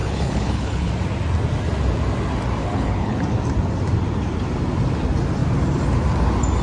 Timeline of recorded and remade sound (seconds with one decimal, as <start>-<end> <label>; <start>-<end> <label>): 0.0-0.9 remade; 0.9-2.6 recorded; 2.6-3.2 remade; 3.2-6.6 recorded

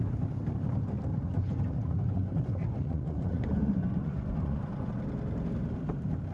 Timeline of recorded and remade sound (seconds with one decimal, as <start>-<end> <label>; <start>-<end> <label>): 0.0-1.1 recorded; 1.1-4.9 remade; 4.9-6.3 recorded

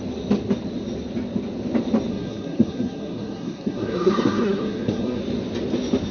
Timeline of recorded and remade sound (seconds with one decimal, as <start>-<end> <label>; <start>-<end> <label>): 0.0-2.1 recorded; 2.1-5.2 remade; 5.2-6.1 recorded

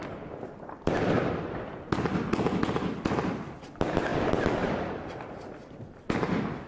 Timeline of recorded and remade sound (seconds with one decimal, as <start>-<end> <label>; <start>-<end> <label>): 0.0-1.9 remade; 1.9-4.1 recorded; 4.1-6.7 remade

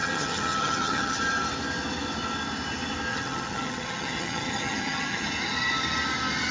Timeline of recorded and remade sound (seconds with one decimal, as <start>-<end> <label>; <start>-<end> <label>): 0.0-1.2 remade; 1.2-3.1 recorded; 3.1-5.3 remade; 5.3-6.5 recorded